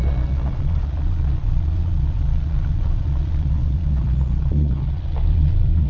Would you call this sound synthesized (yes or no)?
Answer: yes